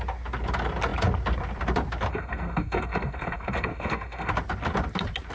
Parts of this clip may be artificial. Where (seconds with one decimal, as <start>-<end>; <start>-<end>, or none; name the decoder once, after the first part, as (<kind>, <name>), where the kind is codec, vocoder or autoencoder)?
2.1-4.3 (codec, SNAC)